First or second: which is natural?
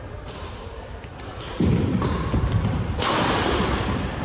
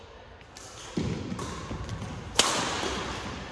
second